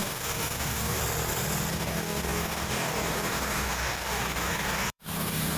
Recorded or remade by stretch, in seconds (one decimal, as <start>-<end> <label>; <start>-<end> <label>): 0.0-1.0 remade; 1.0-1.7 recorded; 1.7-5.6 remade